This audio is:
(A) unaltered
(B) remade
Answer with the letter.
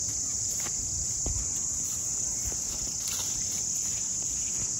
A